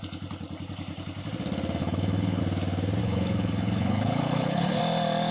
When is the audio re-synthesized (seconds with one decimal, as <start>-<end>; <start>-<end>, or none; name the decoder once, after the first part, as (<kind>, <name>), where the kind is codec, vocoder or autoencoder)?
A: 1.8-2.4 (codec, HILCodec); 3.0-4.8